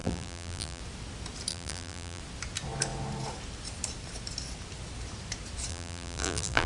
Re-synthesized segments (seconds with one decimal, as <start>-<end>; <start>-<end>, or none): 0.0-0.8; 1.5-2.2; 5.7-6.7